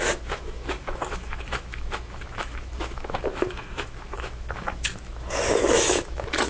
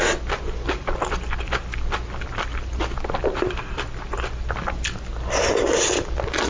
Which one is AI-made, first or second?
first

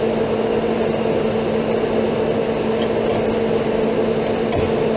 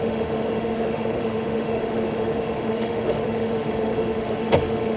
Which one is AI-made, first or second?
second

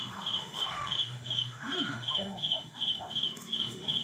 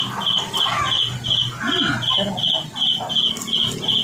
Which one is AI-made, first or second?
first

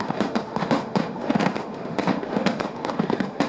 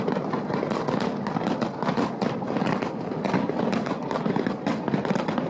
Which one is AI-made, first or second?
first